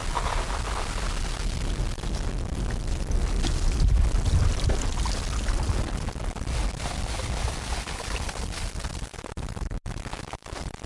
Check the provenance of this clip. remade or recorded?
recorded